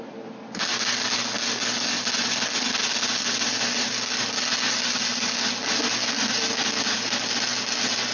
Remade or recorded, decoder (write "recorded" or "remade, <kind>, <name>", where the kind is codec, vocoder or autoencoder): recorded